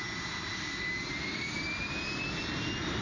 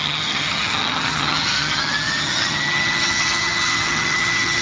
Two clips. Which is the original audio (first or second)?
first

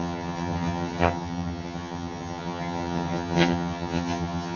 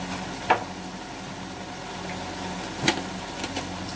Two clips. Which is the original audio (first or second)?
second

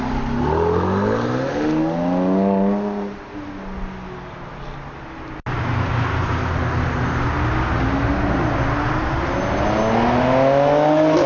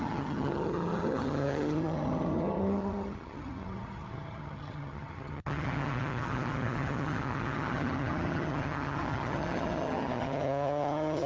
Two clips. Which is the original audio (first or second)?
first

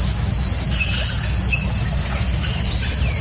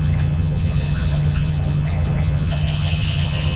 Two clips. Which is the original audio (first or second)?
first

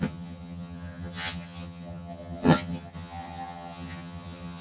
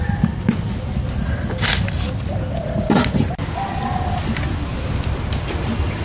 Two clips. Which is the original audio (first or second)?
second